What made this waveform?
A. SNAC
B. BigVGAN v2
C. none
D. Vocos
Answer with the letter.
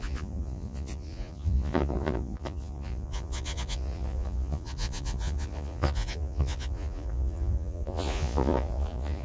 D